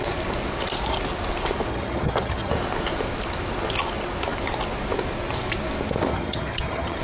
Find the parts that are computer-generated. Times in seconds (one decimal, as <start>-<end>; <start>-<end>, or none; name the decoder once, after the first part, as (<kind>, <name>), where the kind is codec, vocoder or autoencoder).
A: 1.7-2.5 (vocoder, HiFi-GAN); 6.1-7.0